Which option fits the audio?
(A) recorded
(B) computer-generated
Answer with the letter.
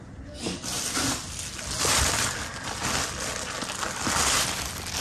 A